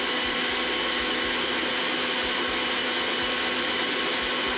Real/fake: real